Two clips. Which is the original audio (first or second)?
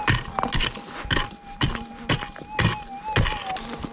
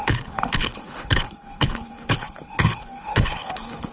first